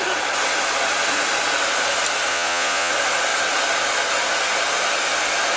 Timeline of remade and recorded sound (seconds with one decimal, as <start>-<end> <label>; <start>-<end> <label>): 0.0-2.3 recorded; 2.3-2.9 remade; 2.9-5.6 recorded